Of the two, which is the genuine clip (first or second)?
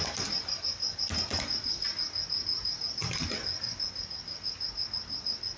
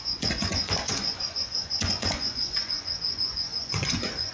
first